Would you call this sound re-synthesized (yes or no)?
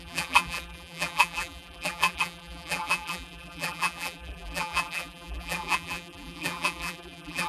yes